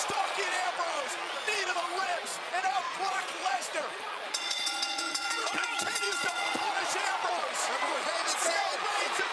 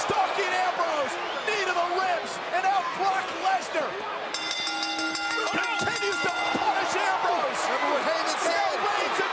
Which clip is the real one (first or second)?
second